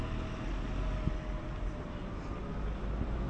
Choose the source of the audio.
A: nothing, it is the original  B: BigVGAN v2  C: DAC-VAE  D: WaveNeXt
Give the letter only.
A